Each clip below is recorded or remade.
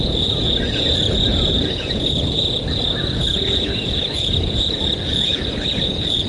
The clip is remade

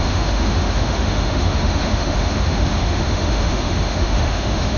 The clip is remade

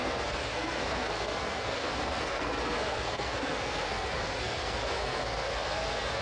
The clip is remade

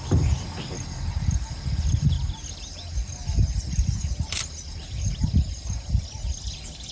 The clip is recorded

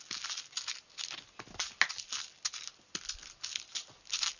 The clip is recorded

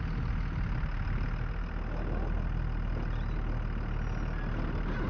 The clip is recorded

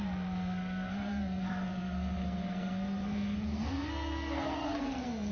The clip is remade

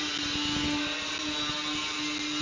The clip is recorded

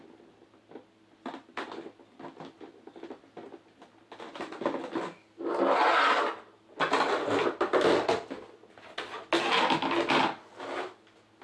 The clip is recorded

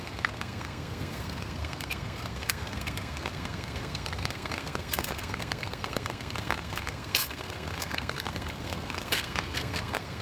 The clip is remade